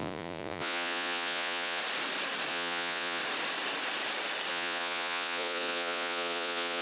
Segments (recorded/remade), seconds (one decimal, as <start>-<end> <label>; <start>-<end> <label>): 0.0-1.8 remade; 1.8-2.5 recorded; 2.5-3.2 remade; 3.2-4.5 recorded; 4.5-6.8 remade